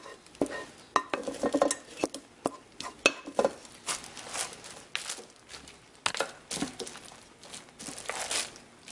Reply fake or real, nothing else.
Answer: real